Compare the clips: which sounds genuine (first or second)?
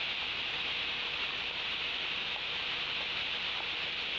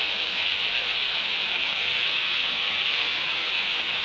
first